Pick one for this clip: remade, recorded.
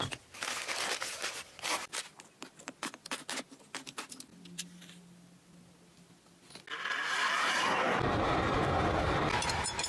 recorded